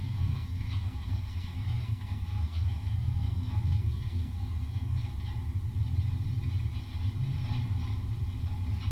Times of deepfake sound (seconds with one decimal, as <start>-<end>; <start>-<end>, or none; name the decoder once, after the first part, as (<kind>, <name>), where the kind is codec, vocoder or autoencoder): 0.0-5.1 (codec, SNAC)